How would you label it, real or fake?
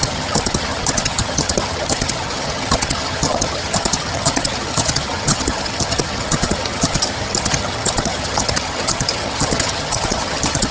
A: fake